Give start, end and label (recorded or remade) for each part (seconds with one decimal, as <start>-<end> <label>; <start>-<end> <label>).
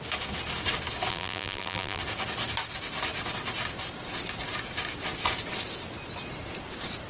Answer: 0.0-1.1 recorded; 1.1-2.0 remade; 2.0-7.1 recorded